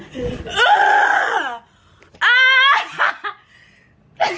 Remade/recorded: recorded